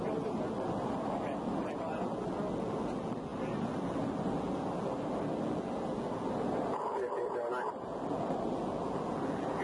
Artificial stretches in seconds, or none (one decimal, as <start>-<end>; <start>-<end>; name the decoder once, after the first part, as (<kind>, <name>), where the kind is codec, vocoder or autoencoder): none